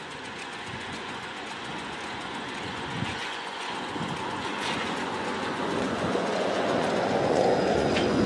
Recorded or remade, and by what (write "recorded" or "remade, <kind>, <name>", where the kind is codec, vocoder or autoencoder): remade, vocoder, Vocos